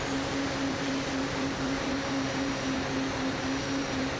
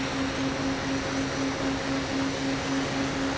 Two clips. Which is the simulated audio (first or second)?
first